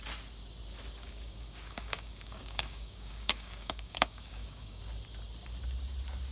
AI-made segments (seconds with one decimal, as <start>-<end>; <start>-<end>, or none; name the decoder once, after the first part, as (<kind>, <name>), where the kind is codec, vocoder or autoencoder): 1.0-4.8 (codec, DAC)